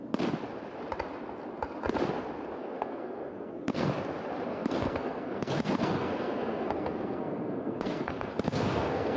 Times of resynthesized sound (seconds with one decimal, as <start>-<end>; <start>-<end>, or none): 2.6-3.9; 4.5-9.2